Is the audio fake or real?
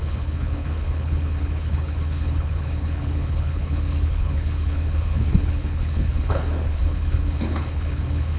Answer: fake